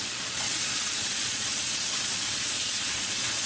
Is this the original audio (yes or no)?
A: no